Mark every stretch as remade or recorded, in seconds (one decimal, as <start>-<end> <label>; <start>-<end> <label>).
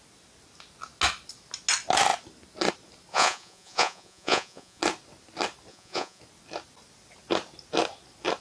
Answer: 0.0-3.1 recorded; 3.1-4.8 remade; 4.8-5.7 recorded; 5.7-6.2 remade; 6.2-8.4 recorded